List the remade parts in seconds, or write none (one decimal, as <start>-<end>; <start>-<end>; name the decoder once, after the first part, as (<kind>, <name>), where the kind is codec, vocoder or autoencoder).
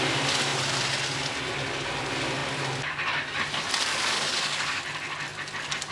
3.9-4.8 (codec, DAC)